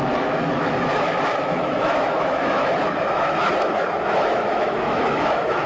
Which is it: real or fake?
fake